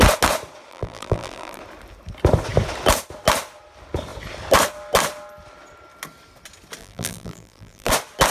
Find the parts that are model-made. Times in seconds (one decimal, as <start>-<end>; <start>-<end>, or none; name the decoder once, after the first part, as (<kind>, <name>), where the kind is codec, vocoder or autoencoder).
0.7-1.6 (vocoder, BigVGAN v2); 6.8-7.9